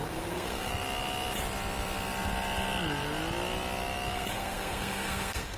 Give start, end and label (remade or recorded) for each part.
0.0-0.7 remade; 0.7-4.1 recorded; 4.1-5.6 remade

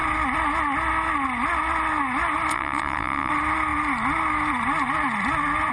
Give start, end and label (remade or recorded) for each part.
0.0-2.5 recorded; 2.5-3.3 remade; 3.3-5.7 recorded

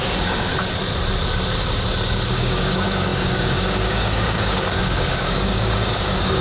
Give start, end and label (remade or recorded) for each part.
0.0-0.5 remade; 0.5-2.3 recorded; 2.3-6.4 remade

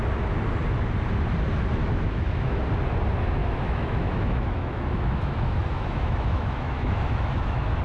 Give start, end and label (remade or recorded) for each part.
0.0-1.8 recorded; 1.8-2.6 remade; 2.6-3.4 recorded; 3.4-7.8 remade

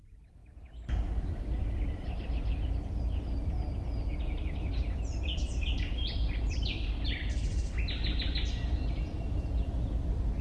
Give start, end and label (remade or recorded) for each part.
0.0-10.4 recorded

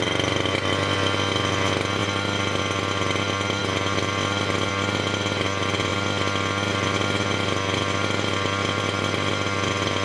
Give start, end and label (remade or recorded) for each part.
0.0-10.0 recorded